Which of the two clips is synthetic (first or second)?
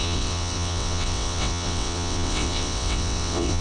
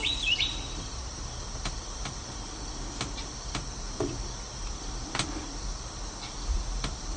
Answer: first